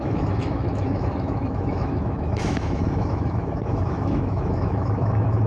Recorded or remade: remade